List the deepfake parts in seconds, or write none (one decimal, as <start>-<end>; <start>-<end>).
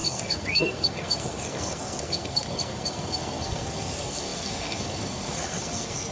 0.0-6.1